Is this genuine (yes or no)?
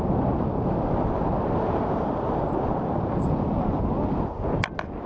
yes